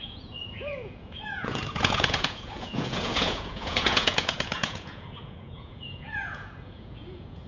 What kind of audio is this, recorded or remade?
remade